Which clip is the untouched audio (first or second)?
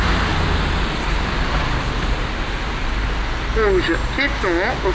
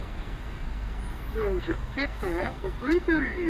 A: first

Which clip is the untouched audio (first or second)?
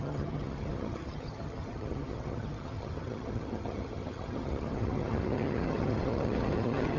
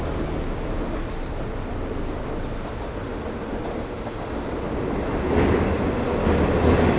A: second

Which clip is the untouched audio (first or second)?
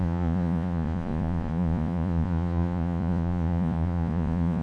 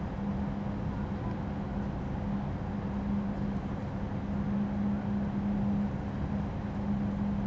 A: second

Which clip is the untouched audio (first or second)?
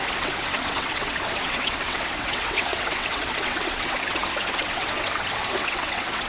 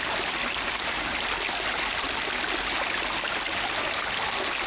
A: second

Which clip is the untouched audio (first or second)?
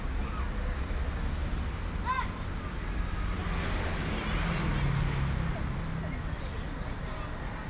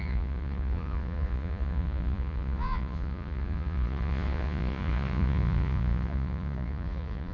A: first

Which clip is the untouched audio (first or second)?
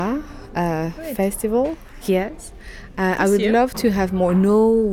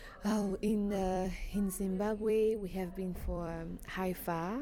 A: first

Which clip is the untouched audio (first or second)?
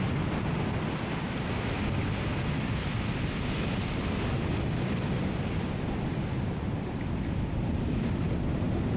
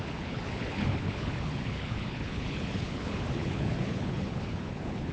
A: first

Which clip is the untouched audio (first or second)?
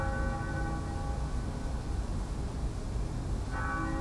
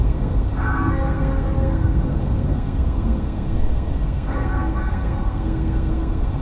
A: first